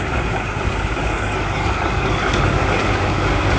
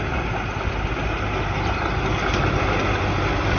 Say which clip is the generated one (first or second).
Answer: first